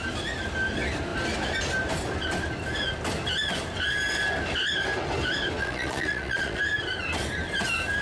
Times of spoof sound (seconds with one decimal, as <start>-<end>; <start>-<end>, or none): 5.6-6.6